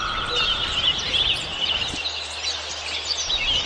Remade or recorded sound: recorded